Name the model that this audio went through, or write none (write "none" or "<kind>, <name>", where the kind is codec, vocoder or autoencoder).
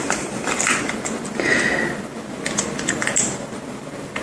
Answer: none